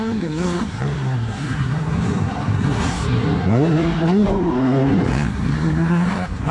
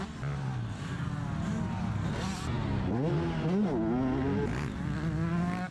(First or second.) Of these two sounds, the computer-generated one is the first